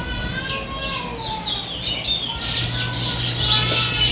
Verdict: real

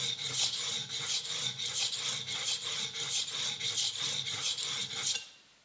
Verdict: real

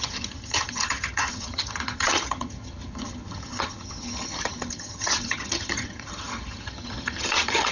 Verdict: fake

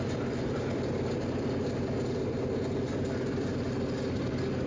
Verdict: real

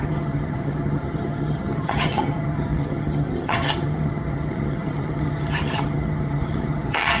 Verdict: fake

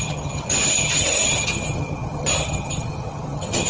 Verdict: fake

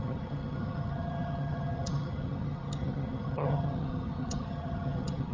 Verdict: fake